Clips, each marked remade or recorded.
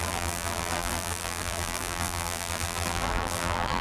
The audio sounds remade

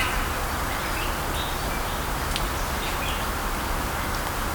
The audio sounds recorded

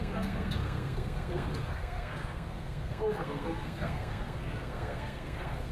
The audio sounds remade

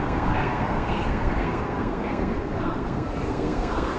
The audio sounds remade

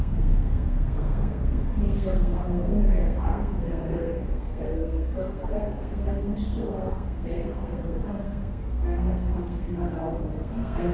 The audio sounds remade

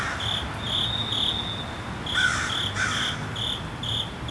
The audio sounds recorded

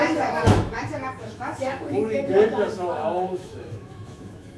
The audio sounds remade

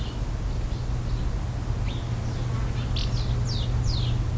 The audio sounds recorded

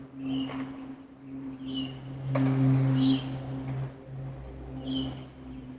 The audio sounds recorded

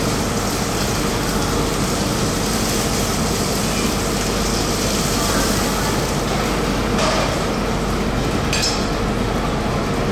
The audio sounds recorded